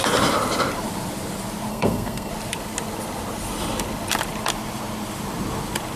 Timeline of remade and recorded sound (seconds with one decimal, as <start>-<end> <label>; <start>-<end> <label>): 0.0-1.7 recorded; 1.7-2.3 remade; 2.3-6.0 recorded